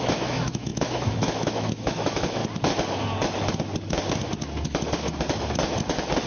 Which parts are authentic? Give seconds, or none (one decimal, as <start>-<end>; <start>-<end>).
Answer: 2.4-6.3